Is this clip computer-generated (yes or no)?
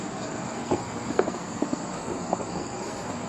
yes